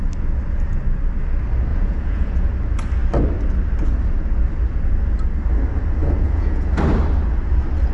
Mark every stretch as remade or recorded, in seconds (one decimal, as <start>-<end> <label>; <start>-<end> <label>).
0.0-1.7 recorded; 1.7-2.5 remade; 2.5-6.0 recorded; 6.0-6.7 remade; 6.7-7.9 recorded